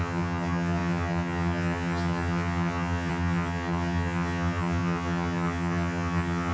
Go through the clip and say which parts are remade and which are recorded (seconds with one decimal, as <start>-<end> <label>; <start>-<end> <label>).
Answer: 0.0-6.5 remade